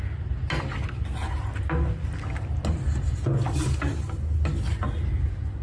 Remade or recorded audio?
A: recorded